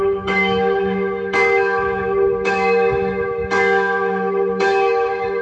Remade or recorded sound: remade